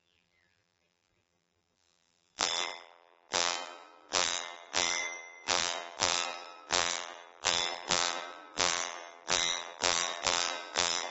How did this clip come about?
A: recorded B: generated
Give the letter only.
B